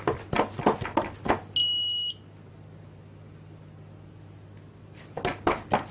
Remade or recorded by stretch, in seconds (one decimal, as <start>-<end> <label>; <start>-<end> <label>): 0.0-5.9 recorded